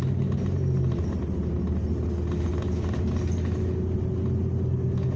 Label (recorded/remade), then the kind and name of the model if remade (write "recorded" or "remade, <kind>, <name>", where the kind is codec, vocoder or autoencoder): recorded